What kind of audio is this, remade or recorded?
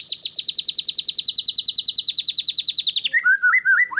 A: recorded